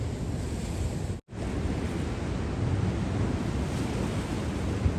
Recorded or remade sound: recorded